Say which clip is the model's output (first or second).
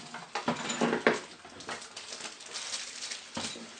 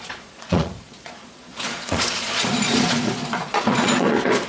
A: second